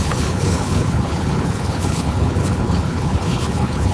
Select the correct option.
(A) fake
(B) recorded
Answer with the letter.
A